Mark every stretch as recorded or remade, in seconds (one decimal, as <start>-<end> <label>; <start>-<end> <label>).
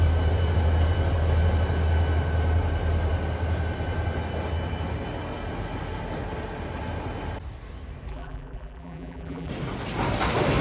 0.0-8.1 recorded; 8.1-9.5 remade; 9.5-10.6 recorded